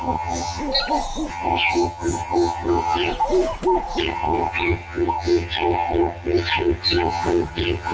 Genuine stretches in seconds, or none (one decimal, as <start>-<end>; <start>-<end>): 0.6-1.3; 3.1-4.0